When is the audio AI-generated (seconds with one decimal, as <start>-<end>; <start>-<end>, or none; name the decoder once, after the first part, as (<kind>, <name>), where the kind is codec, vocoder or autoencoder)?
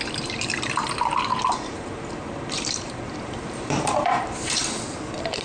1.3-4.5 (vocoder, BigVGAN v2)